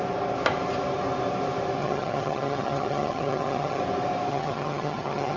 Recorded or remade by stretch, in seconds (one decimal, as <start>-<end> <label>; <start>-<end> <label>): 0.0-1.8 recorded; 1.8-3.8 remade; 3.8-4.3 recorded; 4.3-5.4 remade